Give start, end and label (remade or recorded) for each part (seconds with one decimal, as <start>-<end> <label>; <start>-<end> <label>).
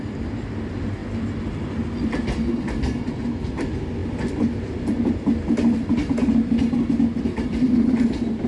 0.0-4.0 recorded; 4.0-7.7 remade; 7.7-8.5 recorded